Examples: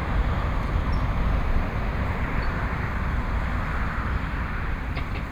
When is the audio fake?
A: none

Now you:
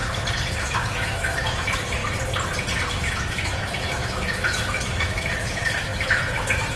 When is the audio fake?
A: 0.6-2.0 (autoencoder, DAC-VAE); 2.9-6.8

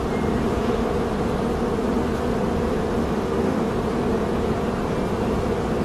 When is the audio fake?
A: 0.4-0.9 (autoencoder, DAC-VAE); 3.0-3.7

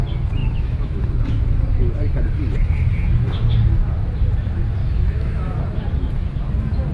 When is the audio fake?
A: 0.4-1.0 (autoencoder, DAC-VAE); 4.8-5.6

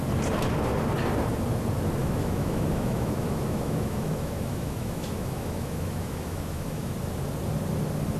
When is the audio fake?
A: 2.0-6.9 (autoencoder, DAC-VAE)

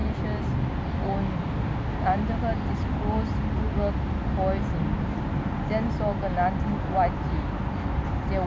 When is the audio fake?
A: none